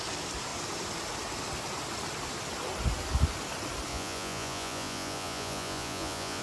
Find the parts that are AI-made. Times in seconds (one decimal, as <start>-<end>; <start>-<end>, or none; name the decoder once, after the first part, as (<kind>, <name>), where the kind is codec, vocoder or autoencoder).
3.9-6.4 (vocoder, Vocos)